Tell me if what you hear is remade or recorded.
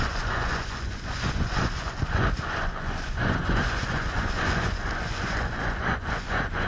remade